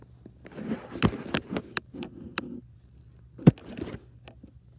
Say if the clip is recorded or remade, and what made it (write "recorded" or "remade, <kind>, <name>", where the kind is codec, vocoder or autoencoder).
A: recorded